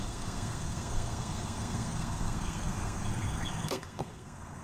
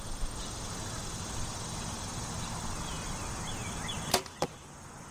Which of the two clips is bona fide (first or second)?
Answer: second